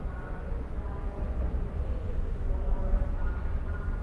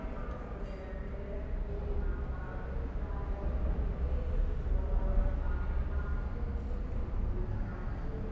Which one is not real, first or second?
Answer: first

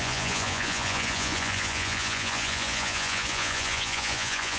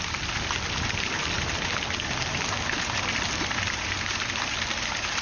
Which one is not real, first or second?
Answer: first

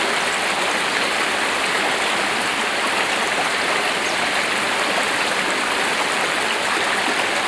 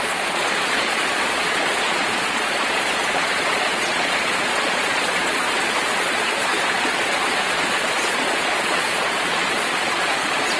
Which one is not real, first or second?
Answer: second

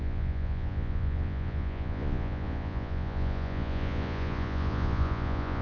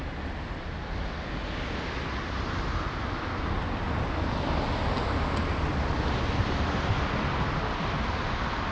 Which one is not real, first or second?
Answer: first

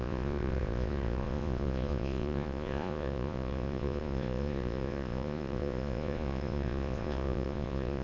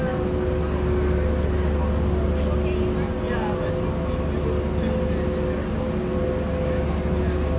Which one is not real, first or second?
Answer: first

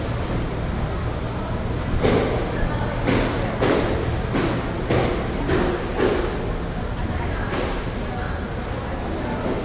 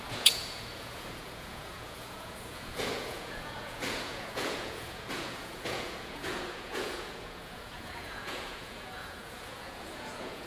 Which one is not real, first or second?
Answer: second